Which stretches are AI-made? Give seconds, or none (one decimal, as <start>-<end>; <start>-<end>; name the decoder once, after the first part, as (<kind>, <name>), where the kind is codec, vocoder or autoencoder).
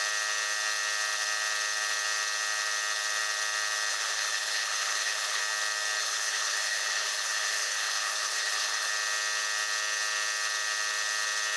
3.9-5.4 (codec, HILCodec); 6.0-8.9